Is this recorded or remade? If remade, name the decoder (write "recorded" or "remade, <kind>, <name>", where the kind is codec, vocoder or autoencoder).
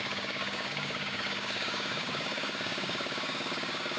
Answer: remade, codec, DAC